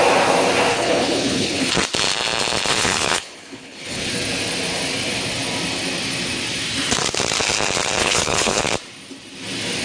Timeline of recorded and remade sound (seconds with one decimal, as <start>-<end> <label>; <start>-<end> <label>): 0.0-0.7 recorded; 0.7-1.7 remade; 1.7-2.7 recorded; 2.7-4.1 remade; 4.1-8.0 recorded; 8.0-8.6 remade; 8.6-9.8 recorded